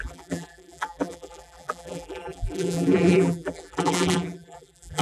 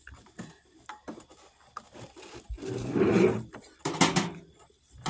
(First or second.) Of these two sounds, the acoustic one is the second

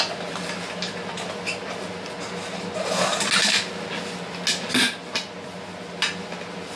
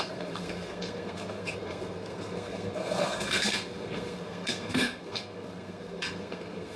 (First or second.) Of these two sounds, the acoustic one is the first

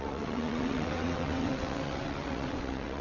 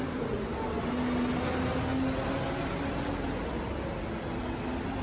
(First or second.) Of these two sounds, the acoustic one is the second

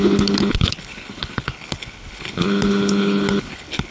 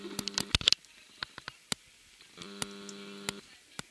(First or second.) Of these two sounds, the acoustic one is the second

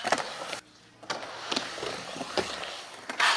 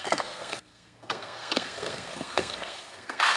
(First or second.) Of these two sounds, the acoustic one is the first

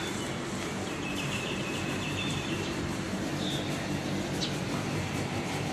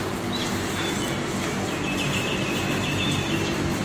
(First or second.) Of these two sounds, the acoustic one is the second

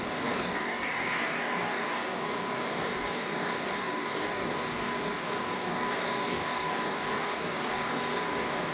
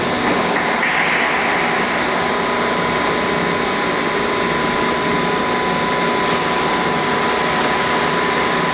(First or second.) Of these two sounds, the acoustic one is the second